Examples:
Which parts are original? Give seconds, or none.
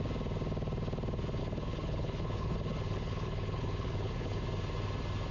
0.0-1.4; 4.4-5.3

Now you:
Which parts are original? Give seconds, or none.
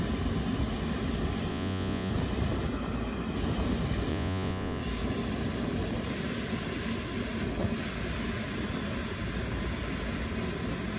0.0-1.5; 2.1-4.1; 4.8-11.0